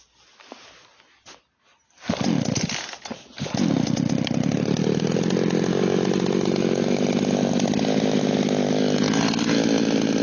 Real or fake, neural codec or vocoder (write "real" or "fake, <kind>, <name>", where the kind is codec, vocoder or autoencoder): real